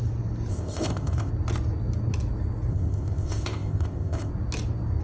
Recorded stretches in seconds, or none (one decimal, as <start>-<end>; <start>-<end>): 0.0-0.5; 1.3-2.7; 4.3-5.0